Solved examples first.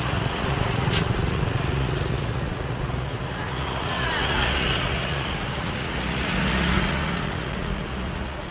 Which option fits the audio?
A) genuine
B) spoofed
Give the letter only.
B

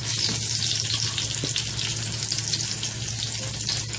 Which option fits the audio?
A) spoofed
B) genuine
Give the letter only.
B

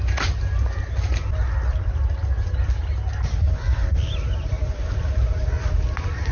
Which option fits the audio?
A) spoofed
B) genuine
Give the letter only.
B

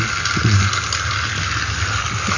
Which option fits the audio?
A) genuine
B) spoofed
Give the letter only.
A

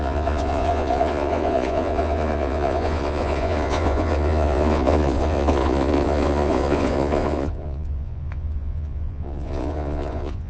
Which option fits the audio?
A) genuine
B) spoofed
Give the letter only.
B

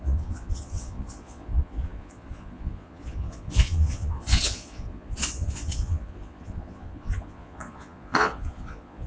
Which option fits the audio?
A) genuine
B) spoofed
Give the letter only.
B